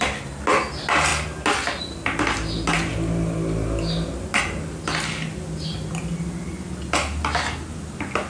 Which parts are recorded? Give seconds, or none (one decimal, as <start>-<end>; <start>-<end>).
0.0-8.3